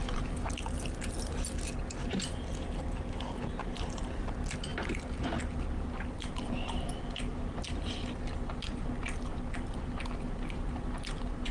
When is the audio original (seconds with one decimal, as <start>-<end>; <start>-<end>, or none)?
0.0-11.5